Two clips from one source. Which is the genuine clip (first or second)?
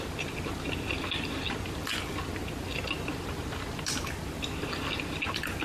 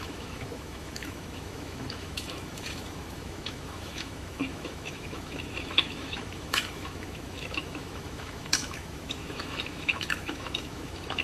first